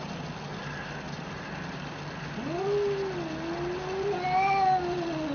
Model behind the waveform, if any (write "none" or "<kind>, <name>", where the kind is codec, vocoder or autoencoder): none